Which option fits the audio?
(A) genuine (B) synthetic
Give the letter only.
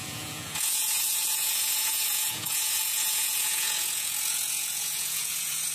B